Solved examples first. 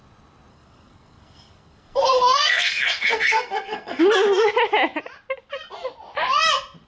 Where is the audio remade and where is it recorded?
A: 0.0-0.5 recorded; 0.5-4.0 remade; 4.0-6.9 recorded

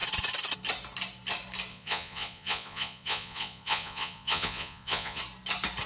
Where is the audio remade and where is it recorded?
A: 0.0-1.7 recorded; 1.7-5.2 remade; 5.2-5.9 recorded

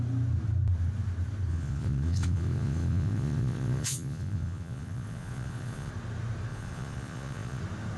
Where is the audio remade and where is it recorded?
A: 0.0-1.5 recorded; 1.5-5.9 remade; 5.9-6.5 recorded; 6.5-7.6 remade; 7.6-8.0 recorded

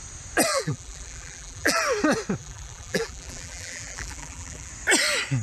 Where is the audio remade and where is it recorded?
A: 0.0-0.5 recorded; 0.5-1.8 remade; 1.8-2.4 recorded; 2.4-4.7 remade; 4.7-5.4 recorded